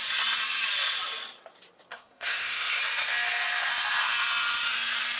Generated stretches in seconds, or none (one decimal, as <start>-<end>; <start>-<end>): 1.9-2.8